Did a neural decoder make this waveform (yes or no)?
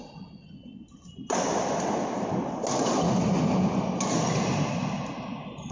no